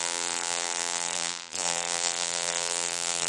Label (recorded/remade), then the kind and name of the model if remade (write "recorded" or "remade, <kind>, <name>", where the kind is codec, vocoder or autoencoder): remade, vocoder, BigVGAN v2